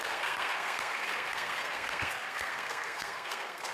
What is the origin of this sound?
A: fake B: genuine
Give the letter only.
A